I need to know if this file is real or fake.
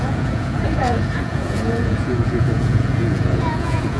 fake